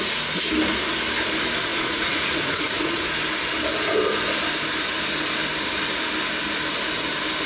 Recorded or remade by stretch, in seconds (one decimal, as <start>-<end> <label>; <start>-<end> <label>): 0.0-1.7 recorded; 1.7-3.1 remade; 3.1-7.5 recorded